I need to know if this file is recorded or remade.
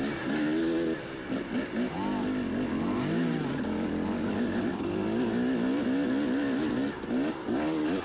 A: recorded